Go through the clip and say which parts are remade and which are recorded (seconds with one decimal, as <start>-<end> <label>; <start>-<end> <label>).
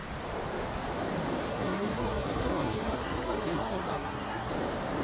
0.0-1.5 recorded; 1.5-4.5 remade; 4.5-5.0 recorded